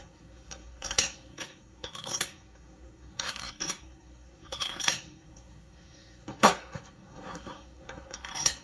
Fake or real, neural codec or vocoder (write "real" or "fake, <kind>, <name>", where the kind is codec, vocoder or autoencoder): fake, codec, SNAC